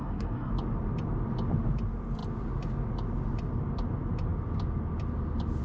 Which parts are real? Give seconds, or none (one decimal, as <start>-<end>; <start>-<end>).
0.5-5.6